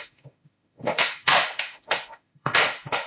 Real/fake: fake